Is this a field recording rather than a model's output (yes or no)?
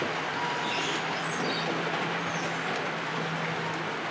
yes